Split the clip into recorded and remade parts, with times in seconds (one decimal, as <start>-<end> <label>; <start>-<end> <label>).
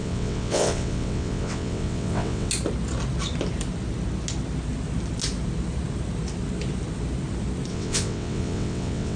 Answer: 0.0-2.5 remade; 2.5-7.7 recorded; 7.7-9.2 remade